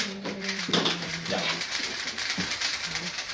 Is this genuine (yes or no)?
no